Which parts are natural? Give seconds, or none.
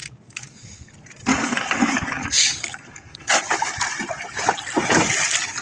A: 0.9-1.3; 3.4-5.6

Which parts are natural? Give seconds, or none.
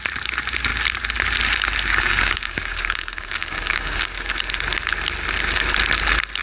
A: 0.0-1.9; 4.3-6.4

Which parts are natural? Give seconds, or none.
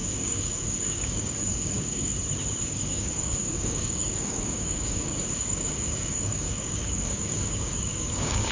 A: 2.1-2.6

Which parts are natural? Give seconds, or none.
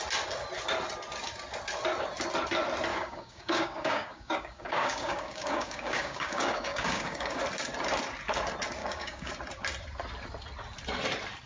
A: 0.0-2.9; 7.4-8.8; 9.3-11.5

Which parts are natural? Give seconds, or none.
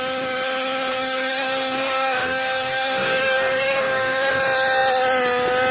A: 0.0-0.9; 4.3-5.7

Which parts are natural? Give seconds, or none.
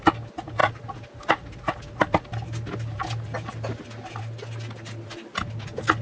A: 0.0-6.0